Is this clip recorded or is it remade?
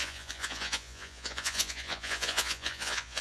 remade